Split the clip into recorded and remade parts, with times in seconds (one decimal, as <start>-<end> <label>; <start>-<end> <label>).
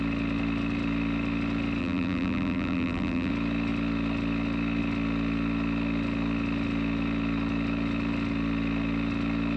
0.0-1.8 recorded; 1.8-3.3 remade; 3.3-9.6 recorded